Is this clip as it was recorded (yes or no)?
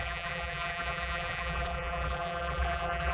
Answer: no